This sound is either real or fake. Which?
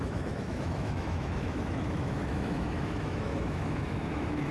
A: fake